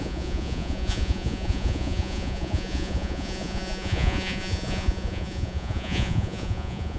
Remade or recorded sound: remade